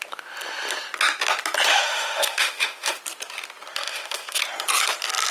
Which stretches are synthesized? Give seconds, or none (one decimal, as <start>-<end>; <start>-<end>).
1.7-3.0; 3.8-4.4